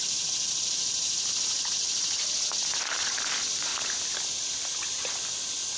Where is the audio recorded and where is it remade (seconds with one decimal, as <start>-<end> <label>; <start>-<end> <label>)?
0.0-5.8 recorded